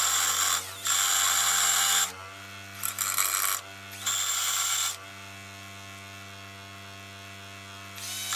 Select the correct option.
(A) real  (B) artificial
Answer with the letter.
A